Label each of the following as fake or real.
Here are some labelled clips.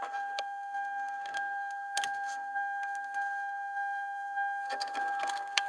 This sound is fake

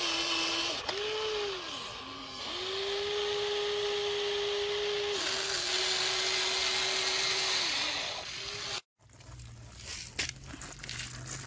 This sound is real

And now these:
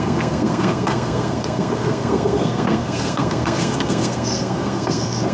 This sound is fake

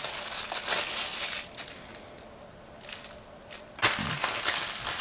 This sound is real